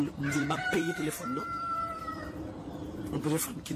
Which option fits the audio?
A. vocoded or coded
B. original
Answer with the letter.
A